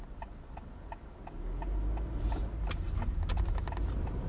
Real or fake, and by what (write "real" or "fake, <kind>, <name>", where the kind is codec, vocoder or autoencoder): real